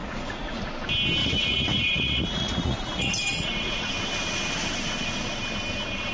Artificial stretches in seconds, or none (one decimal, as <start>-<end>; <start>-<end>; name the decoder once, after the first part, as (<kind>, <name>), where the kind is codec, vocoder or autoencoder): 0.0-0.7 (vocoder, Vocos); 1.2-3.9